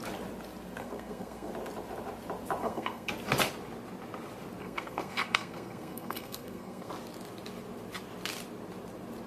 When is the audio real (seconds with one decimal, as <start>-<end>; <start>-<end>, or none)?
0.0-0.8; 1.5-2.6; 3.1-4.6; 6.9-9.3